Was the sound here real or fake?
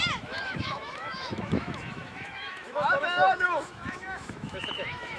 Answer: fake